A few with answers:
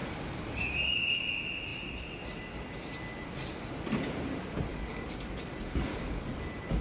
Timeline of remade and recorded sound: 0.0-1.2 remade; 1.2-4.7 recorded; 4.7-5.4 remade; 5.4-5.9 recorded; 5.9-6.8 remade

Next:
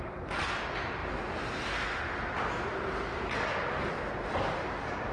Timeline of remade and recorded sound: 0.0-5.1 recorded

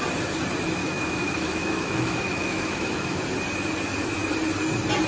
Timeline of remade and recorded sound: 0.0-0.8 recorded; 0.8-3.2 remade; 3.2-5.1 recorded

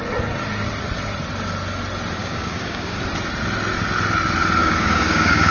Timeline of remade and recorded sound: 0.0-2.2 recorded; 2.2-3.0 remade; 3.0-4.6 recorded; 4.6-5.5 remade

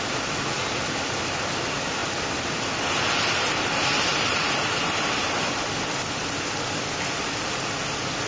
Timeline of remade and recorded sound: 0.0-8.3 recorded

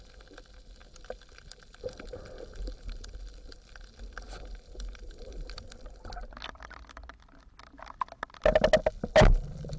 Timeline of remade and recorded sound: 0.0-0.8 recorded; 0.8-5.9 remade; 5.9-9.8 recorded

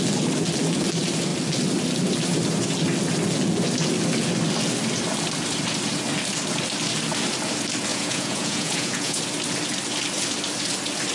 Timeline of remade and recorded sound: 0.0-7.9 recorded; 7.9-9.2 remade; 9.2-11.1 recorded